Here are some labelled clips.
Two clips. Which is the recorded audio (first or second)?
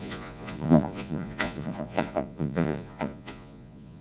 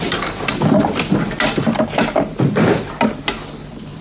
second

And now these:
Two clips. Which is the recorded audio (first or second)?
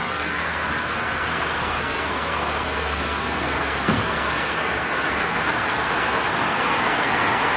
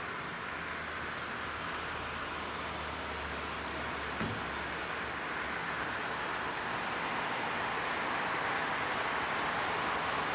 second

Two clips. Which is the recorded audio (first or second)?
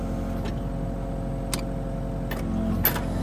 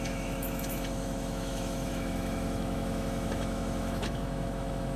first